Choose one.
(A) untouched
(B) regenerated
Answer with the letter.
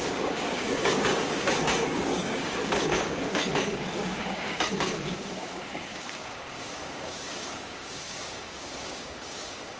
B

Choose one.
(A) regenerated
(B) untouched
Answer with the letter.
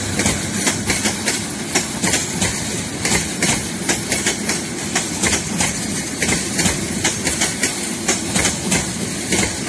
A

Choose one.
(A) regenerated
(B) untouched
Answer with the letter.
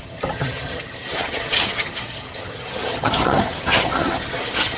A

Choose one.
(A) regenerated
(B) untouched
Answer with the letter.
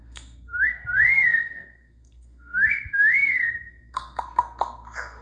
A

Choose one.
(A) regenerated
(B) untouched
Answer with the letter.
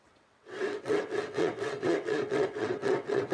A